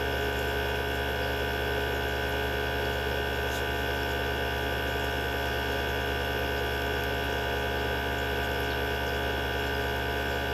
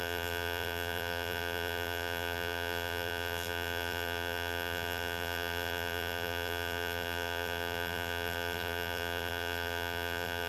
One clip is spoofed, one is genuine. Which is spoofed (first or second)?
second